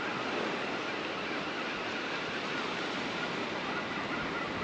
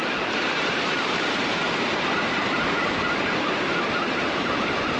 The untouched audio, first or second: first